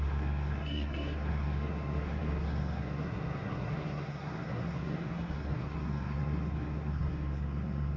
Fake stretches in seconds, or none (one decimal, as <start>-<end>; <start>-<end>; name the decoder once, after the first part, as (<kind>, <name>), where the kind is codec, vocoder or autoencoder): 0.0-8.0 (codec, SNAC)